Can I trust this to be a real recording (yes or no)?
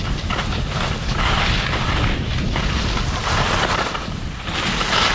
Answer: yes